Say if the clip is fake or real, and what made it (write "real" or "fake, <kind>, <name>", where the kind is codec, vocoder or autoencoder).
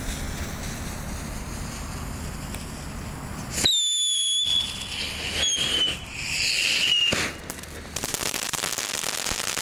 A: real